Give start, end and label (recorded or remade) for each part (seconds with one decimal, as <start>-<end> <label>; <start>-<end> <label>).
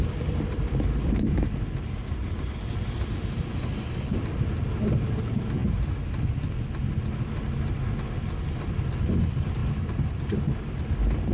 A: 0.0-9.6 recorded; 9.6-10.4 remade; 10.4-11.3 recorded